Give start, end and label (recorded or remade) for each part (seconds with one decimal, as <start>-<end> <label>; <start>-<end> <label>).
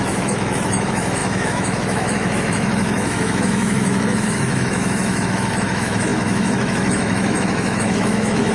0.0-8.5 remade